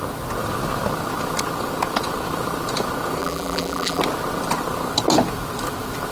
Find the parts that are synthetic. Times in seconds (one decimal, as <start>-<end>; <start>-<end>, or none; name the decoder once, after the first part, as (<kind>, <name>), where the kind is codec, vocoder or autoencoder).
3.2-4.0 (vocoder, BigVGAN v2)